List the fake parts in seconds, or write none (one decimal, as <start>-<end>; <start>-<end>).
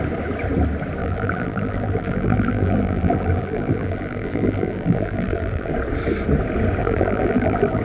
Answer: 1.0-5.7; 6.8-7.8